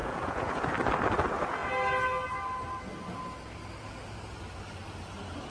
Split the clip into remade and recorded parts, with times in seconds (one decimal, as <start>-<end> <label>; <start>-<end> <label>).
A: 0.0-0.7 remade; 0.7-5.5 recorded